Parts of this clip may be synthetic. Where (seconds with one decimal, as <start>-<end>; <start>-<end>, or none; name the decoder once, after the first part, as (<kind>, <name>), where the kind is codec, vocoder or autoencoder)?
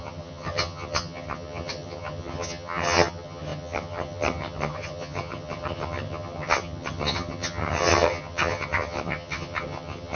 0.0-10.2 (vocoder, HiFi-GAN)